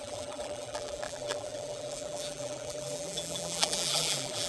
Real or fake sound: fake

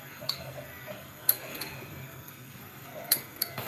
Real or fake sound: fake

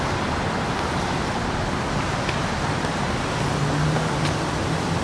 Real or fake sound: real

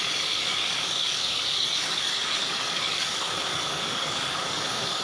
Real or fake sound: fake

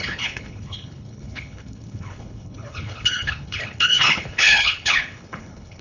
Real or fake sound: fake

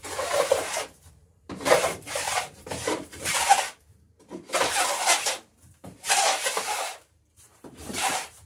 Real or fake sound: fake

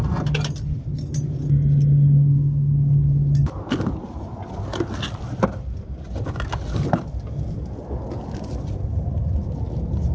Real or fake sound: real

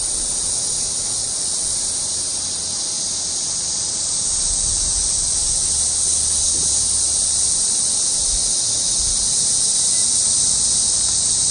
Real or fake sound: real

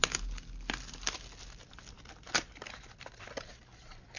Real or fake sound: real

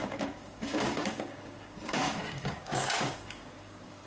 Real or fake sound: fake